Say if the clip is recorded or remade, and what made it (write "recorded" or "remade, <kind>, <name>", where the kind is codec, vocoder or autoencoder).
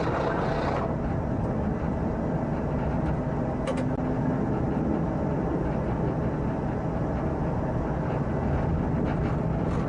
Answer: recorded